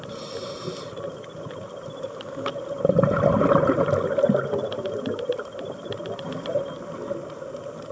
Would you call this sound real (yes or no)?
yes